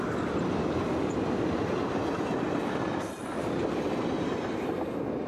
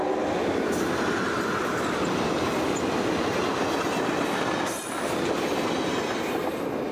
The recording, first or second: second